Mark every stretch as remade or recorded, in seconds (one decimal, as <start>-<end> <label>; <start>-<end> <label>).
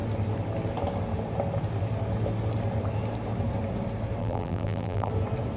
0.0-4.2 recorded; 4.2-5.1 remade; 5.1-5.6 recorded